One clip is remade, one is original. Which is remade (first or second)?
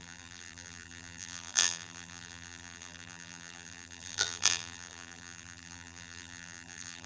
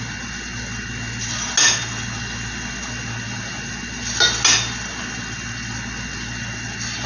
first